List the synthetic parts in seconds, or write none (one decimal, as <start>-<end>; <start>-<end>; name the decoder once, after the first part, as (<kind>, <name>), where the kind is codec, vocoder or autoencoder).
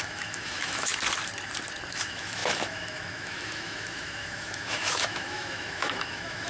0.0-0.9 (autoencoder, DAC-VAE); 1.9-6.5